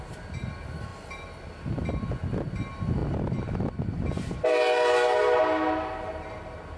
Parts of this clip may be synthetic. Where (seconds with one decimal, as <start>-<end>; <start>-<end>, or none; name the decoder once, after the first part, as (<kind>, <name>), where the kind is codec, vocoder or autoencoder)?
none